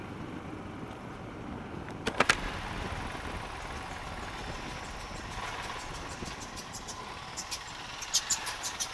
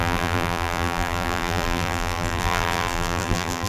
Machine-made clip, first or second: second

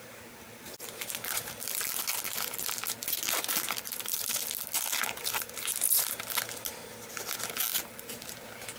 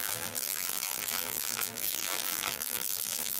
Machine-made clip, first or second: second